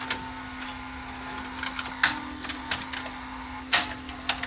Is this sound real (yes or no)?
yes